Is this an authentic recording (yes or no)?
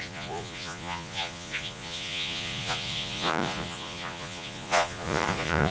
no